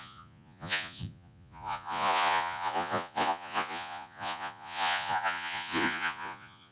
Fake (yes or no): yes